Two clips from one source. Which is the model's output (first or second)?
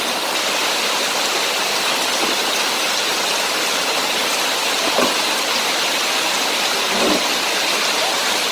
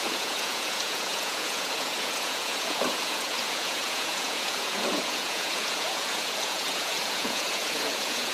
second